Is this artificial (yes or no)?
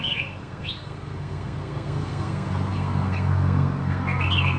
yes